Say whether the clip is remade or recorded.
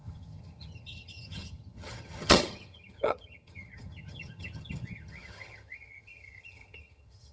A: remade